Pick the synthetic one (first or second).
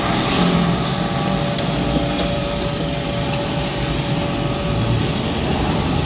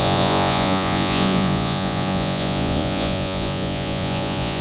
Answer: second